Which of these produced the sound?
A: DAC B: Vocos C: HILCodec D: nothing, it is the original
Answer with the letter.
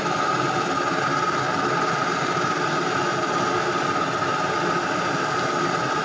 D